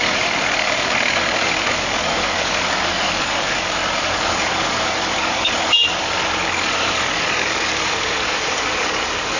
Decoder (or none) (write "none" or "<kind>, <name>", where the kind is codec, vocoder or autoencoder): codec, DAC